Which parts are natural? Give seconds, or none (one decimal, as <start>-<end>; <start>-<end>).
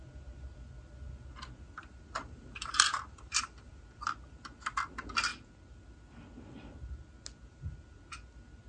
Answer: 0.0-2.2; 3.7-8.7